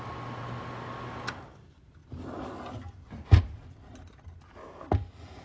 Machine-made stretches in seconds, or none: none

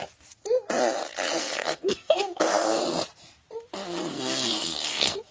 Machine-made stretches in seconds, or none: 1.4-2.8 (codec, SNAC); 4.1-5.3

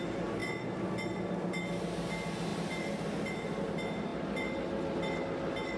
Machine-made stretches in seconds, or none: none

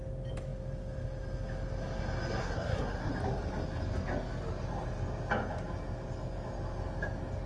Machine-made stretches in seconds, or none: 2.4-3.1 (codec, SNAC)

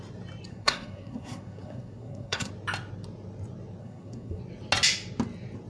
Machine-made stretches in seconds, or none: 0.5-2.5 (codec, SNAC); 3.8-4.4